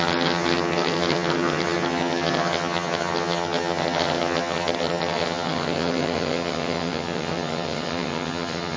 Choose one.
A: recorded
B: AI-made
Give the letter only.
B